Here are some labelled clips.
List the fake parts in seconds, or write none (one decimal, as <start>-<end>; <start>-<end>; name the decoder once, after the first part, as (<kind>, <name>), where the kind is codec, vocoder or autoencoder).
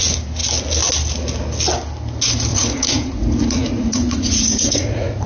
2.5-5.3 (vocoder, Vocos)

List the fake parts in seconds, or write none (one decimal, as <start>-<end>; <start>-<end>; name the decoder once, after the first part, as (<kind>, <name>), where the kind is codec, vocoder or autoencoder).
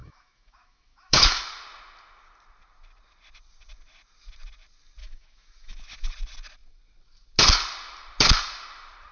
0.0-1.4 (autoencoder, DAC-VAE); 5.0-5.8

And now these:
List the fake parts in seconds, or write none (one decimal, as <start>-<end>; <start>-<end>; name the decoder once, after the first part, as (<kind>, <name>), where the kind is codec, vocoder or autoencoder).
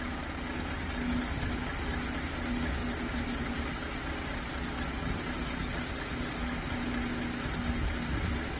none